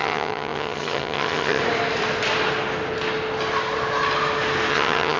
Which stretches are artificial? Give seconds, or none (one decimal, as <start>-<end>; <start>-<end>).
0.0-1.6; 4.7-5.2